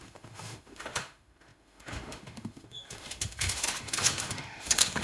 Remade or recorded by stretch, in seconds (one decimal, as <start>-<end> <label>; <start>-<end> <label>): 0.0-5.0 remade